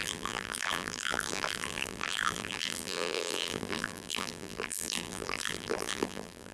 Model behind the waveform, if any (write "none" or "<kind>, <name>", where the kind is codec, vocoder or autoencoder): vocoder, BigVGAN v2